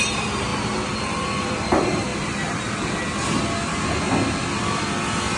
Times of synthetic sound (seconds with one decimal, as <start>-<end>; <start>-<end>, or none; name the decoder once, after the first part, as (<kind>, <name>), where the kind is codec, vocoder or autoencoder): 0.0-0.5 (vocoder, BigVGAN v2); 1.0-2.1